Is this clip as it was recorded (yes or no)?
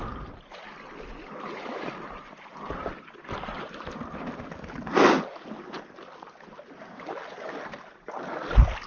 yes